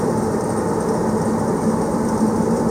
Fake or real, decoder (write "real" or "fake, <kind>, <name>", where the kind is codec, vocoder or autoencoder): fake, vocoder, BigVGAN v2